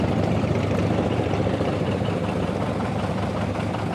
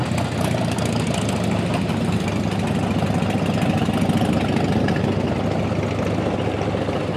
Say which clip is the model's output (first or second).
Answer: first